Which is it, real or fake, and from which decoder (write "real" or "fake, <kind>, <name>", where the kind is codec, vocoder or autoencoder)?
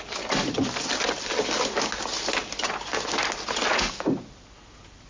real